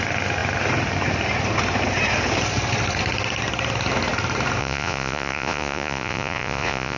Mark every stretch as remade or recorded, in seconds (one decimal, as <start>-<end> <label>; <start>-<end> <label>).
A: 0.0-4.6 recorded; 4.6-7.0 remade